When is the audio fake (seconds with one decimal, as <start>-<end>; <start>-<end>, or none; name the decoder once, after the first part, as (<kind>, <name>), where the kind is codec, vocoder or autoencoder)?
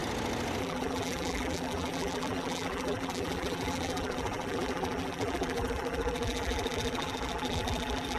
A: 0.6-8.2 (vocoder, BigVGAN v2)